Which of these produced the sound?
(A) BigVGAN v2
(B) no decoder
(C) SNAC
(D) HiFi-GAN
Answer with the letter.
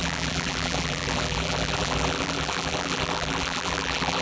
A